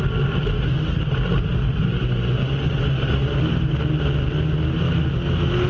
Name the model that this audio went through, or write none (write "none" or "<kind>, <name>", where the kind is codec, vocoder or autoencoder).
none